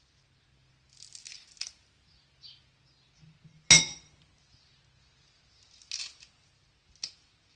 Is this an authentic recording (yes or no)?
yes